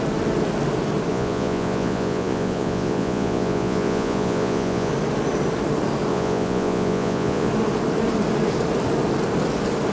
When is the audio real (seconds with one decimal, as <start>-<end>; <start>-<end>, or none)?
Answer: 0.0-1.1; 4.9-6.1; 7.5-9.9